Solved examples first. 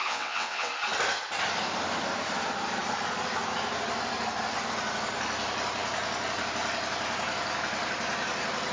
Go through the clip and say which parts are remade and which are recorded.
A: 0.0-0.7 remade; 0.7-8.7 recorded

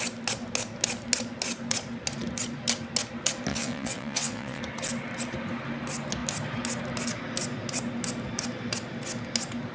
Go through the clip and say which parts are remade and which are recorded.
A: 0.0-3.5 recorded; 3.5-4.6 remade; 4.6-9.7 recorded

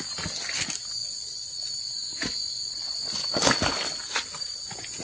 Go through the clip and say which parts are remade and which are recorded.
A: 0.0-5.0 recorded

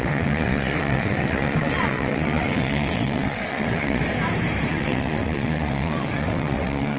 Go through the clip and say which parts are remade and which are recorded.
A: 0.0-4.0 remade; 4.0-4.7 recorded; 4.7-7.0 remade

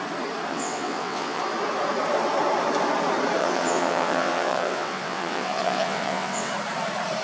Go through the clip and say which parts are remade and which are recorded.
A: 0.0-0.5 recorded; 0.5-1.4 remade; 1.4-3.4 recorded; 3.4-6.5 remade; 6.5-7.2 recorded

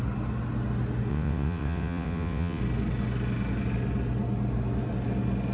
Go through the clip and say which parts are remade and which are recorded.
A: 0.0-1.1 recorded; 1.1-2.6 remade; 2.6-5.5 recorded

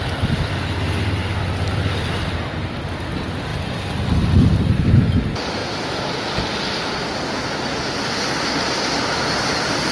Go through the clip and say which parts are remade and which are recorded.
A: 0.0-9.9 recorded